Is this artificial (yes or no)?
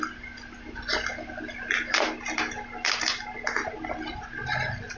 no